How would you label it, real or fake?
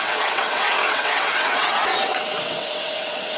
fake